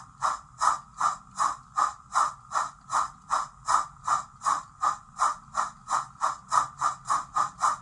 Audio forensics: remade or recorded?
recorded